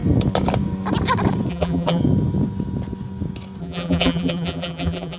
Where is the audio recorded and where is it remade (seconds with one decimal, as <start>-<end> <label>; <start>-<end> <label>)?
0.0-1.5 recorded; 1.5-2.0 remade; 2.0-3.6 recorded; 3.6-5.2 remade